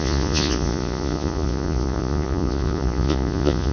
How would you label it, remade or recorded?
remade